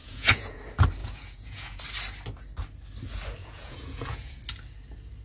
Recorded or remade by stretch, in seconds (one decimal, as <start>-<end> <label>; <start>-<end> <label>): 0.0-0.6 remade; 0.6-1.0 recorded; 1.0-1.8 remade; 1.8-3.4 recorded; 3.4-4.4 remade; 4.4-5.2 recorded